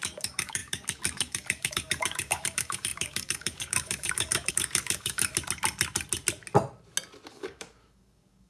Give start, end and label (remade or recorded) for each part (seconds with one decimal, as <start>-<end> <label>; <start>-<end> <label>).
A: 0.0-5.3 remade; 5.3-7.3 recorded; 7.3-8.5 remade